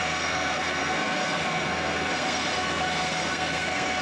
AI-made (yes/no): yes